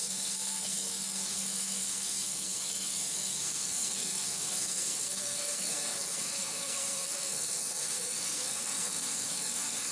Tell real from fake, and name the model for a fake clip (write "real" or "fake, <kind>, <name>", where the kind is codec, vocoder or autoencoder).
fake, codec, SNAC